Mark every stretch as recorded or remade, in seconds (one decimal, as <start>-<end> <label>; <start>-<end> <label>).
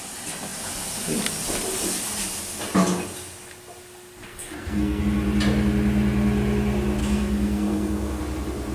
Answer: 0.0-4.3 recorded; 4.3-5.0 remade; 5.0-7.0 recorded; 7.0-8.2 remade; 8.2-8.7 recorded